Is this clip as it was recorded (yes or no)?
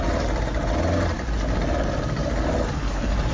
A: yes